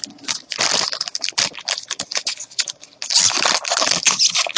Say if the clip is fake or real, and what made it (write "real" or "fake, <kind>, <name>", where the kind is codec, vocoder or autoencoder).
real